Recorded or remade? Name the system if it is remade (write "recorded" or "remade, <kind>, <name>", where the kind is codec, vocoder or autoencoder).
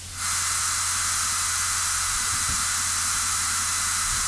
recorded